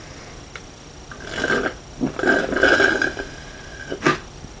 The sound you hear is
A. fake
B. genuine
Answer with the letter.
B